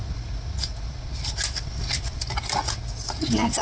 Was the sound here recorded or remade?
recorded